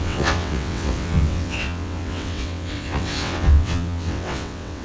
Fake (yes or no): yes